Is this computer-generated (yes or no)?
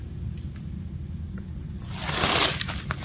no